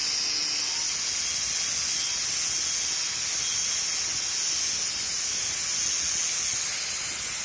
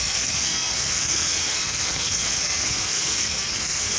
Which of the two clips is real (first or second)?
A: first